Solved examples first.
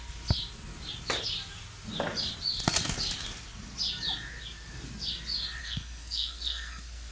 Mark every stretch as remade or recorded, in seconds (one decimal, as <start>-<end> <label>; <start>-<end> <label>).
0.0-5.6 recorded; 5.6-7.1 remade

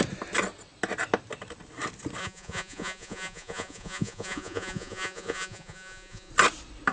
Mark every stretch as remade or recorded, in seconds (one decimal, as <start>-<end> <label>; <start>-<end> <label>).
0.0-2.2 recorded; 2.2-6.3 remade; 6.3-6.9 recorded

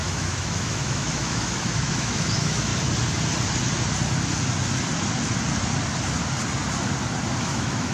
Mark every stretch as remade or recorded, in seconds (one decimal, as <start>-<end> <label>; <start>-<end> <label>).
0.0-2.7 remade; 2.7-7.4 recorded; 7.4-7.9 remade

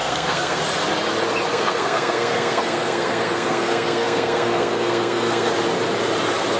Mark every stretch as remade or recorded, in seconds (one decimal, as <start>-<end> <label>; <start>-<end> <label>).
0.0-0.6 remade; 0.6-1.5 recorded; 1.5-5.5 remade; 5.5-6.6 recorded

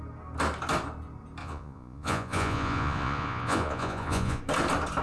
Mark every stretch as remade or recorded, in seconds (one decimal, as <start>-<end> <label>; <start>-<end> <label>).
0.0-1.4 recorded; 1.4-4.4 remade; 4.4-5.0 recorded

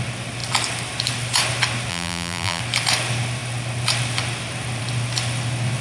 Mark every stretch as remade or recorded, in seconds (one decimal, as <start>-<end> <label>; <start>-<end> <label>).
0.0-1.9 recorded; 1.9-2.6 remade; 2.6-5.8 recorded